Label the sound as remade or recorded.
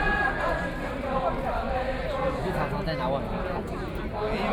recorded